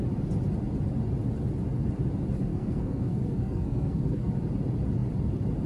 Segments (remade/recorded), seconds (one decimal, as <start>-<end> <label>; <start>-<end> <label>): 0.0-2.5 recorded; 2.5-4.3 remade; 4.3-5.7 recorded